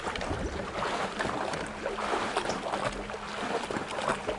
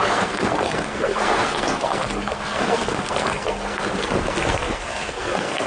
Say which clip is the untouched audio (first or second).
first